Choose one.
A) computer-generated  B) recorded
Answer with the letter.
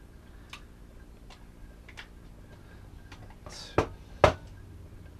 B